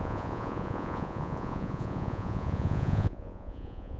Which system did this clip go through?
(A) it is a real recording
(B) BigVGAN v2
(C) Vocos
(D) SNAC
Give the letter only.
C